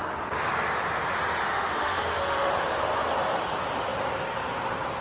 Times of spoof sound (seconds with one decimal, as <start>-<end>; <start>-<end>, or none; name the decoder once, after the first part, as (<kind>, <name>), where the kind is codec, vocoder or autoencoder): 1.4-2.5 (autoencoder, DAC-VAE)

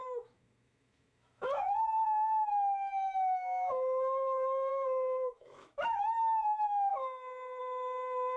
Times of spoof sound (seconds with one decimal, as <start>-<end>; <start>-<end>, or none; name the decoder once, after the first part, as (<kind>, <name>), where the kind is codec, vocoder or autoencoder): 0.0-6.9 (autoencoder, DAC-VAE); 7.6-8.4

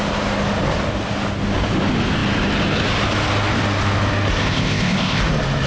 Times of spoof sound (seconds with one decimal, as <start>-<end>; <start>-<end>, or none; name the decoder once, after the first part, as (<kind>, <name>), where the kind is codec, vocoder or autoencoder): 4.4-5.2 (codec, ZipCodec)

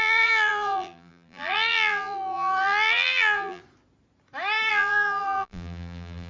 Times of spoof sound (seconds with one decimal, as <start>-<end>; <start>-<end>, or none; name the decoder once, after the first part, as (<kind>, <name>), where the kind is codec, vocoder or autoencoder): 0.0-3.6 (vocoder, BigVGAN v2); 4.7-6.3

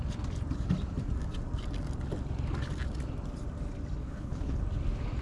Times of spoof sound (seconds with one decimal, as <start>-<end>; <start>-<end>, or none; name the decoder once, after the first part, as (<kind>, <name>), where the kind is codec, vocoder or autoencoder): 4.0-4.6 (codec, HILCodec)

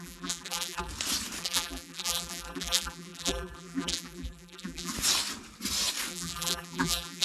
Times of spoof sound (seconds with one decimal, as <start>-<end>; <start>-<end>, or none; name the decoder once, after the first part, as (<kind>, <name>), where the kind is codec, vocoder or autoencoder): 0.0-0.9 (vocoder, BigVGAN v2); 1.4-4.9; 6.1-7.2

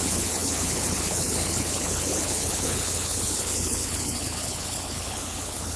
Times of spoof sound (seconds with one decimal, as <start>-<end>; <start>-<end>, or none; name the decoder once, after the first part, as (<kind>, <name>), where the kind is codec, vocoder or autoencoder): 0.0-5.8 (codec, HILCodec)

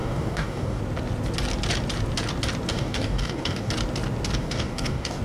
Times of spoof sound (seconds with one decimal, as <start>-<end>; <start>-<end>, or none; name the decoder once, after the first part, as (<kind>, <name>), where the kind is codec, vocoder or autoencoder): 0.0-0.8 (codec, DAC); 2.7-3.7; 4.4-5.2